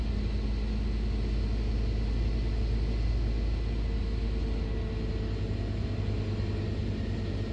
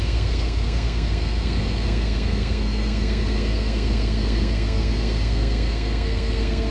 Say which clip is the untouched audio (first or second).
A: first